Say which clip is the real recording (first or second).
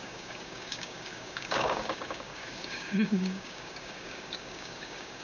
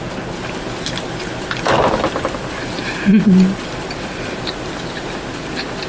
second